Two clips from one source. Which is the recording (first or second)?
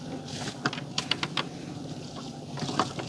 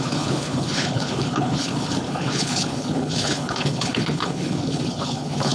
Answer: first